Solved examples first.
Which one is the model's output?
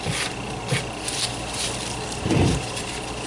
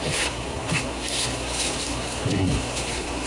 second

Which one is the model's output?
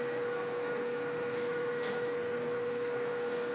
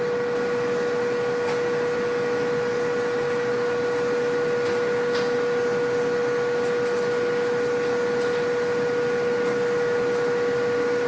first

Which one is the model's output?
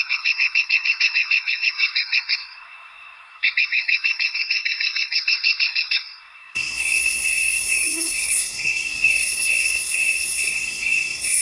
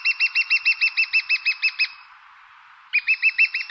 first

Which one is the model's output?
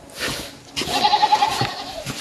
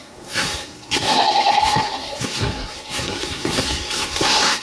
second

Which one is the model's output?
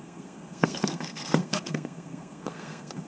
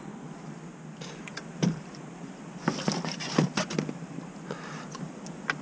first